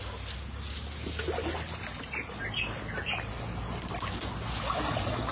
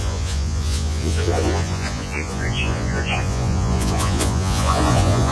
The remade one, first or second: second